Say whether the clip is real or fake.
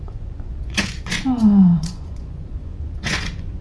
fake